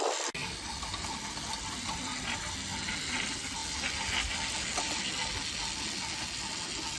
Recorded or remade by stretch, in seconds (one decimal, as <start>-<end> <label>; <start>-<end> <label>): 0.0-7.0 recorded